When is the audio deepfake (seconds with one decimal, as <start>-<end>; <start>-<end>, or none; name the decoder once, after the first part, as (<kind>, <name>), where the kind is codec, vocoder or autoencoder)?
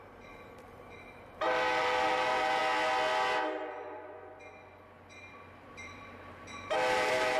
0.0-2.6 (vocoder, BigVGAN v2); 5.7-7.4